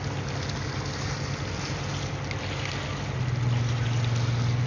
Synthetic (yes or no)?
no